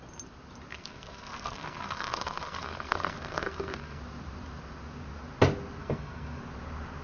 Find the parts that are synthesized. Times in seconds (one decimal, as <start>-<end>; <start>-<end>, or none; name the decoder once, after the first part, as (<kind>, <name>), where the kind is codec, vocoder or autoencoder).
0.7-4.0 (codec, SNAC); 5.8-6.4